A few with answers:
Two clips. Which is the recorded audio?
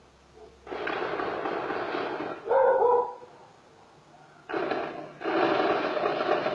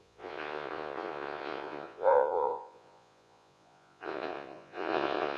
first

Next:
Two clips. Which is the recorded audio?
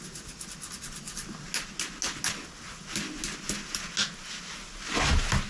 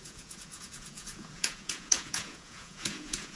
first